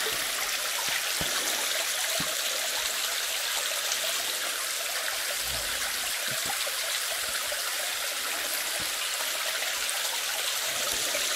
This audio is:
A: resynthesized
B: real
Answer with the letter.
B